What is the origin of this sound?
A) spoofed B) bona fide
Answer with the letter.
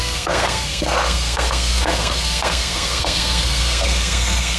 A